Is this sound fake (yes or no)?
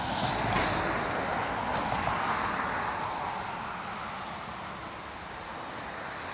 no